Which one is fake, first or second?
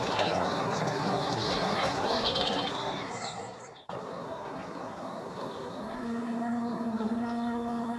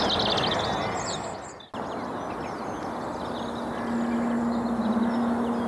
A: first